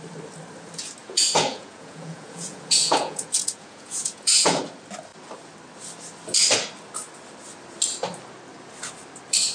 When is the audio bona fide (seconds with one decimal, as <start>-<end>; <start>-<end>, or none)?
0.0-1.0; 4.6-9.5